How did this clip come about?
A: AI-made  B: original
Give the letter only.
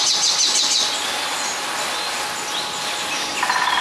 B